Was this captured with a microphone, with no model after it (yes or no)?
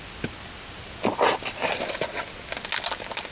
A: yes